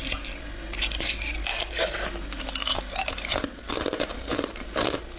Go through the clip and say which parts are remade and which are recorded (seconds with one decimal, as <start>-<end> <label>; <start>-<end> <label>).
0.0-5.2 recorded